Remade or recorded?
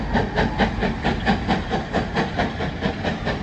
recorded